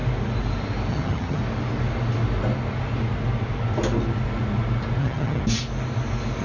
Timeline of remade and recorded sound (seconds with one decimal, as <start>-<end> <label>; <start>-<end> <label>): 0.0-0.9 recorded; 0.9-1.4 remade; 1.4-5.0 recorded; 5.0-5.4 remade; 5.4-6.4 recorded